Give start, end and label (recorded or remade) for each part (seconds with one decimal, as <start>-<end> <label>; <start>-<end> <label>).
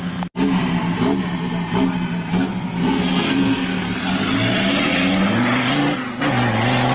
0.0-2.3 recorded; 2.3-3.8 remade; 3.8-6.9 recorded